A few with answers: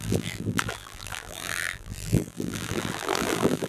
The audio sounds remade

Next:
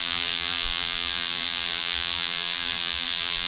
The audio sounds remade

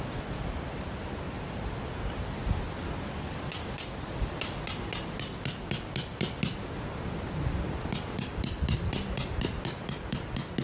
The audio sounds recorded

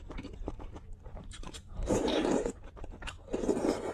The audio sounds remade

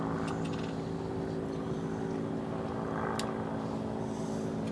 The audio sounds recorded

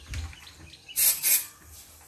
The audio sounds recorded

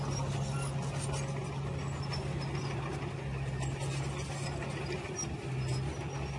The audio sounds recorded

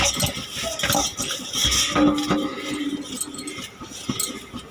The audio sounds recorded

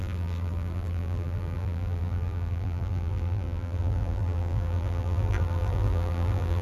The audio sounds remade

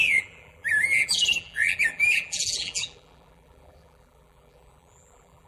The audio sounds remade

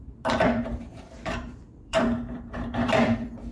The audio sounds remade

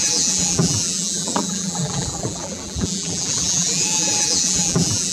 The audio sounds remade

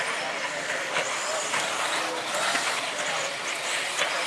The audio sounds recorded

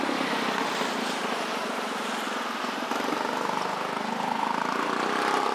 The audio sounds recorded